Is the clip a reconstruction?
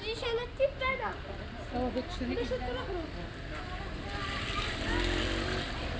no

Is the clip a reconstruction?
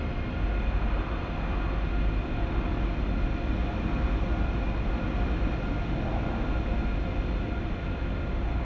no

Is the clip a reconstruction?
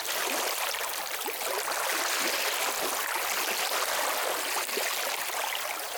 no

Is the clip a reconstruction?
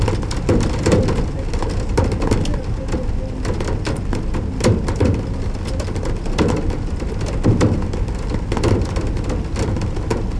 no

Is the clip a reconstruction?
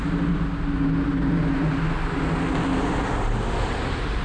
no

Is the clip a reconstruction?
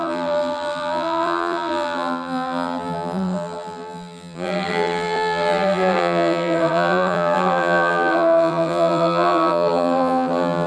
yes